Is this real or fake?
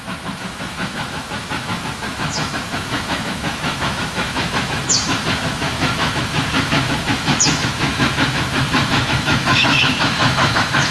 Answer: fake